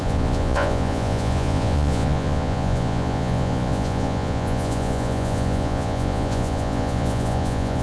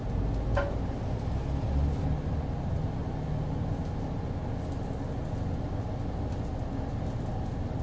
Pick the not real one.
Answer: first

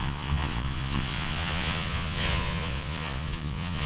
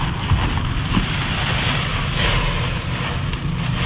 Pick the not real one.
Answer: first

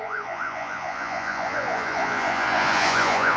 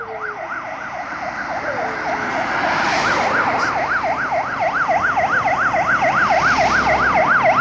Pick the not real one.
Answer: first